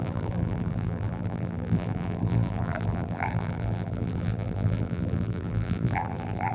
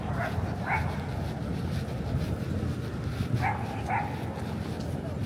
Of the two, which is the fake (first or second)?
first